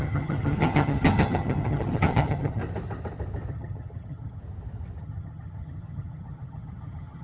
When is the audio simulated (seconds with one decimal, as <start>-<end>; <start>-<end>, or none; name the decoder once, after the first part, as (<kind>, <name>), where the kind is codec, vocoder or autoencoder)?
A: 0.0-2.6 (vocoder, HiFi-GAN); 3.5-4.4; 5.0-7.2